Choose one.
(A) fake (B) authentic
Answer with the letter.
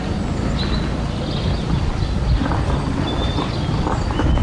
B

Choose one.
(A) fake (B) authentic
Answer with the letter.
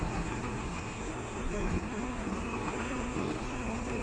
A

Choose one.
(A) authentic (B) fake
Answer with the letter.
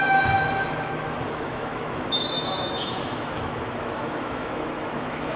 B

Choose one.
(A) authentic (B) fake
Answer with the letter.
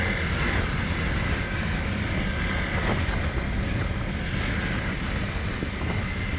A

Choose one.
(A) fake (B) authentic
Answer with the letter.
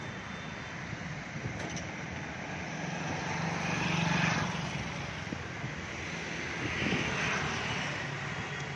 B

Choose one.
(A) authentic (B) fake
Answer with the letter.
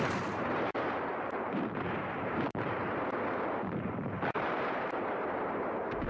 B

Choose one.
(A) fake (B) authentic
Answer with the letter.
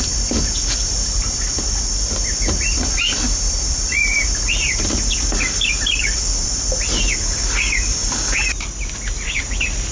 A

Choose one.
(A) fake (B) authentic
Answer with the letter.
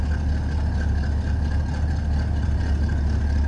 B